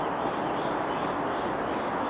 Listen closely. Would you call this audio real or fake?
real